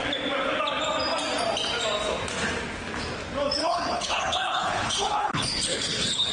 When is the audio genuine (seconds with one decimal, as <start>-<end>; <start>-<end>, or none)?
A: 0.0-3.6